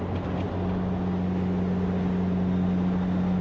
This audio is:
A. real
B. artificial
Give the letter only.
A